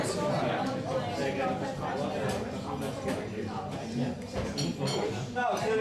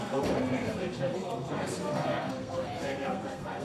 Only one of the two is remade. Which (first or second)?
second